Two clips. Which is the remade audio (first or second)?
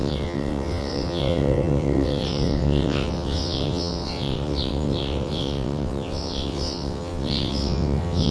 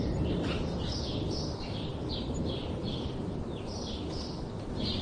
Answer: first